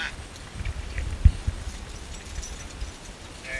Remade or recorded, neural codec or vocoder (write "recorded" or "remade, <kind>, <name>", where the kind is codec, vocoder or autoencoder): recorded